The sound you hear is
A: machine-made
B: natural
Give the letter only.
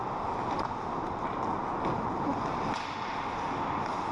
B